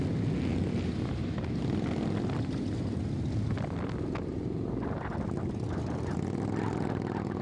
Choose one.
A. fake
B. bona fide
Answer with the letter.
B